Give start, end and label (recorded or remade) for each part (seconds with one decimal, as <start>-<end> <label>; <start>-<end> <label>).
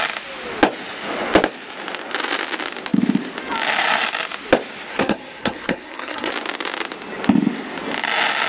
0.0-4.9 recorded; 4.9-6.3 remade; 6.3-8.5 recorded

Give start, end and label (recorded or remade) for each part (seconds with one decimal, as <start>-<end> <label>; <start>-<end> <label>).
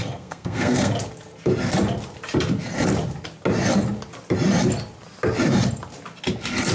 0.0-0.9 remade; 0.9-6.7 recorded